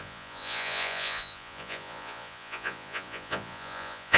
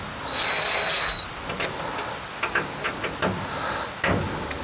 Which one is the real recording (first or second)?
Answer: second